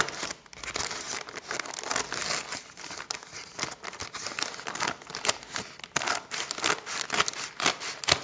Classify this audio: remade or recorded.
recorded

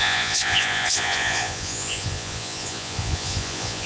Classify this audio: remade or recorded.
remade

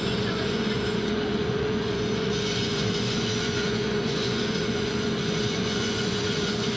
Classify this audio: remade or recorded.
remade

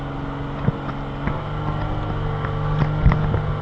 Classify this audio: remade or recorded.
recorded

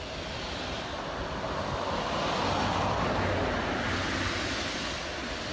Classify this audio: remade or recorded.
recorded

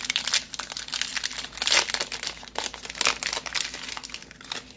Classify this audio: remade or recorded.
recorded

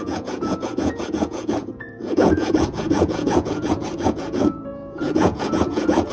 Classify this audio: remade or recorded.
remade